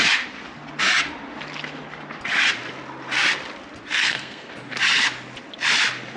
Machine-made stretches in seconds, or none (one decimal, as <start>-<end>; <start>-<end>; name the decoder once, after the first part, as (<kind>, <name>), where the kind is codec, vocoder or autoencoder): 3.9-4.5 (codec, SNAC)